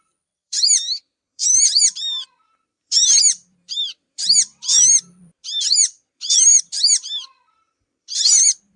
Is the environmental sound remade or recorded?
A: remade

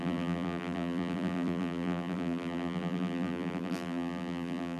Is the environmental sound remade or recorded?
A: remade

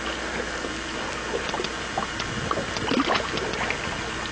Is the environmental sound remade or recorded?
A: recorded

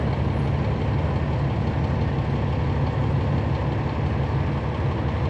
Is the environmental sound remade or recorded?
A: recorded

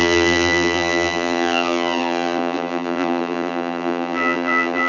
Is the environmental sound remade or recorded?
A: remade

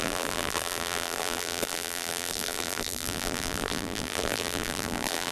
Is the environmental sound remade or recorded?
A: remade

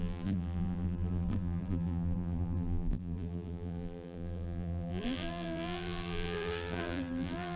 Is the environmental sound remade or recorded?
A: remade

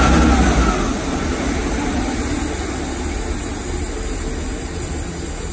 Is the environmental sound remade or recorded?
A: recorded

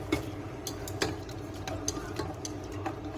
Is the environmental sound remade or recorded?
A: recorded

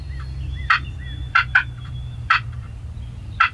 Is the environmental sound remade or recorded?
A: remade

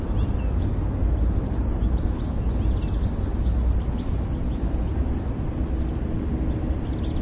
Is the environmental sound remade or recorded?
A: recorded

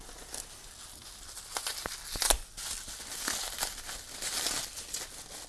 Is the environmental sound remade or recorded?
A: recorded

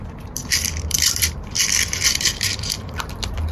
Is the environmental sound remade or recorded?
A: remade